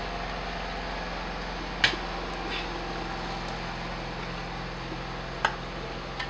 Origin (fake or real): real